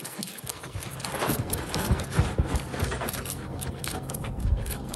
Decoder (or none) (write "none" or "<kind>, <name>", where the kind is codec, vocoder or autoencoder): codec, SNAC